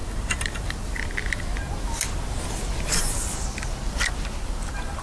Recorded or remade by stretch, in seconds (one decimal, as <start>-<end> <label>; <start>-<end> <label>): 0.0-5.0 recorded